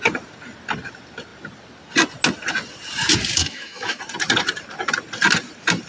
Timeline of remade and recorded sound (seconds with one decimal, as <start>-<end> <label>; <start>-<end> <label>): 0.0-3.4 recorded; 3.4-4.0 remade; 4.0-5.9 recorded